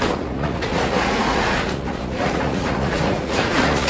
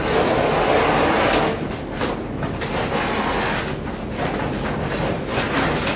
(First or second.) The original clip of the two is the second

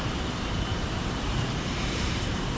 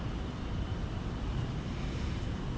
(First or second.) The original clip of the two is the second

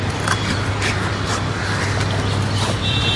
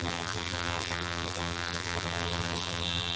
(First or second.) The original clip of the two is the first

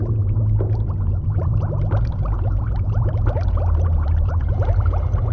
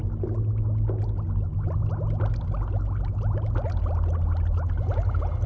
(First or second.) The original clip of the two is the second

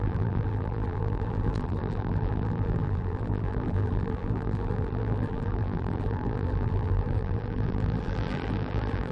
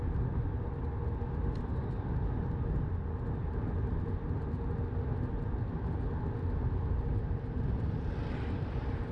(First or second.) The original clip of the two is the second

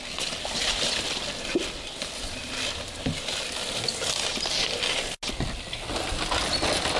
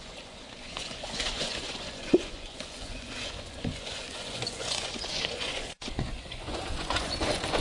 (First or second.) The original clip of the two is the first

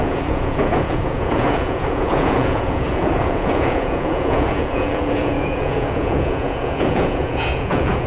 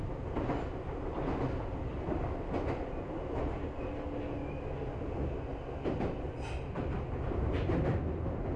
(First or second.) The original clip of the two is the second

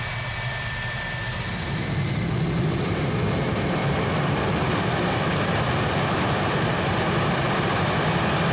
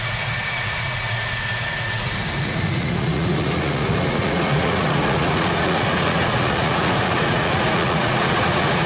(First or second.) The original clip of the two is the first